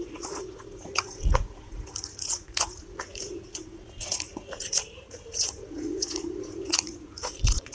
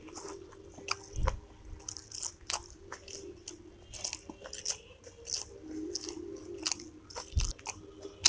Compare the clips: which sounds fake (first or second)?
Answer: first